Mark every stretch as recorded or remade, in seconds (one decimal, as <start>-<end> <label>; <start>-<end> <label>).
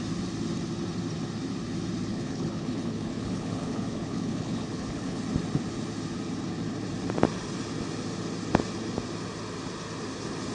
0.0-2.1 recorded; 2.1-5.2 remade; 5.2-10.5 recorded